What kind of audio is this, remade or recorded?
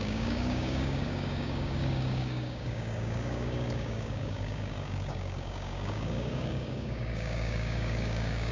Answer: remade